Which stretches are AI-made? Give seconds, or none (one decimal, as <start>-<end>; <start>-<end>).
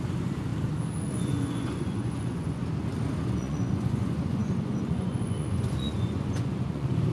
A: 0.0-0.5; 1.0-2.6; 3.2-7.1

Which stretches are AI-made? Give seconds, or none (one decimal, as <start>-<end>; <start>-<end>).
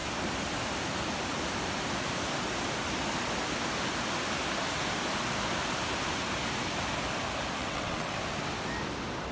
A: 7.6-8.2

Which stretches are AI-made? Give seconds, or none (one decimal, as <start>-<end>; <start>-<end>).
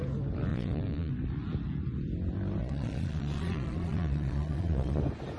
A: 0.5-1.1; 2.6-5.0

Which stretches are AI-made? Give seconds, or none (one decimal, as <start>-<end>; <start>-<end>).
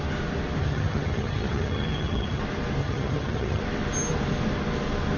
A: 0.6-2.4; 2.8-3.6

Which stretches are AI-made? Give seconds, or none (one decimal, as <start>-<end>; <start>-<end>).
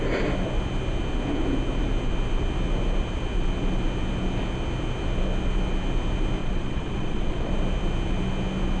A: 6.4-7.5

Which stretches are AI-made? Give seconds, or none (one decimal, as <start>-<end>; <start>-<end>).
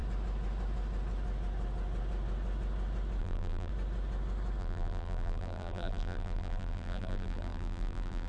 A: 3.2-3.7; 4.6-8.3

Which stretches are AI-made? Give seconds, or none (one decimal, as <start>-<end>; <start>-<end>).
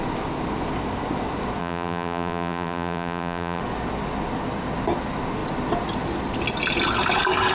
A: 1.6-3.6